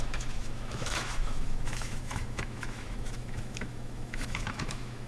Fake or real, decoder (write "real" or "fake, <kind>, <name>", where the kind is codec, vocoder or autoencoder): fake, autoencoder, DAC-VAE